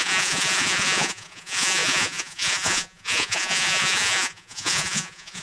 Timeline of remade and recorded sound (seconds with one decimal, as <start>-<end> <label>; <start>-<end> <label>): 0.0-5.4 remade